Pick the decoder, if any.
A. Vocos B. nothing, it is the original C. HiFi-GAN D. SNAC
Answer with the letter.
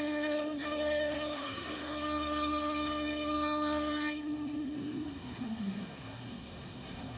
D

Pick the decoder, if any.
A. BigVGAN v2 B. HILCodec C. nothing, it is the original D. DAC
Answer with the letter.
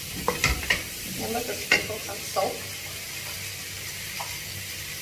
A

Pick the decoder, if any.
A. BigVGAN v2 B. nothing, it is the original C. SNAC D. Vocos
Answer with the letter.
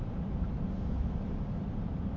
A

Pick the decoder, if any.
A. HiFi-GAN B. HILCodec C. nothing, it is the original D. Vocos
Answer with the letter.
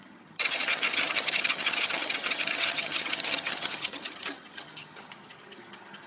A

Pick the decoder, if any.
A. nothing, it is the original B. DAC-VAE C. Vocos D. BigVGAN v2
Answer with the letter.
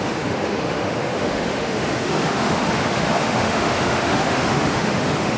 B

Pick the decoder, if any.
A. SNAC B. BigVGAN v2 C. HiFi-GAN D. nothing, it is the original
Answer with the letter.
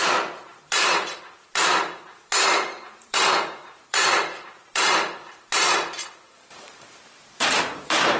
B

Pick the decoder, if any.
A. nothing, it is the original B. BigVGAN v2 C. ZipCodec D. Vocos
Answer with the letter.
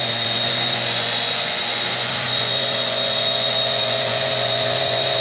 D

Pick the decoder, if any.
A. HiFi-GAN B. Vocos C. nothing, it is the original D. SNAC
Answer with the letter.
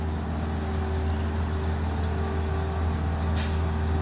C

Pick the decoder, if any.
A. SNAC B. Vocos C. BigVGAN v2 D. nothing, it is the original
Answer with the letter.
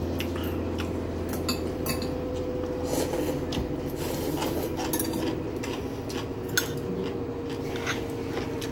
D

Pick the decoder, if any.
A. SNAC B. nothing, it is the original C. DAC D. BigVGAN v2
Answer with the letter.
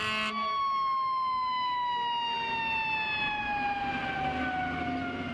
B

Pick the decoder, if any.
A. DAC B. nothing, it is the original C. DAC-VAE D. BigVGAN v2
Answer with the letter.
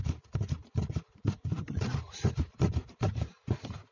B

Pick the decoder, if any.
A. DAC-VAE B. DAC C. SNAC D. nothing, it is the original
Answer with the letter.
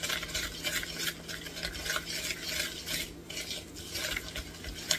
D